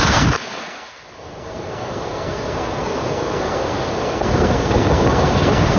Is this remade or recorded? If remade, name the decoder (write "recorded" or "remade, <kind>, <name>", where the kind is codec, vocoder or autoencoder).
remade, codec, SNAC